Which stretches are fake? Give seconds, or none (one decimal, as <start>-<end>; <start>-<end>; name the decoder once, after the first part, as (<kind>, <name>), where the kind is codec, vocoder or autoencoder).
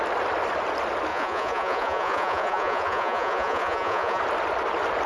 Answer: 1.1-4.2 (vocoder, Vocos)